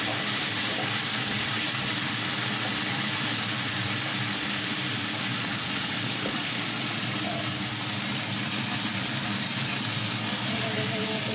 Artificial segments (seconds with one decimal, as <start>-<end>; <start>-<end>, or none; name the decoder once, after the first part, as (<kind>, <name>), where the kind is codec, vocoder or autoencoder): 5.3-7.1 (vocoder, Vocos)